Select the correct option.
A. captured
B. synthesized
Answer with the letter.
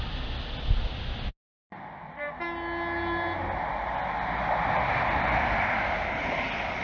A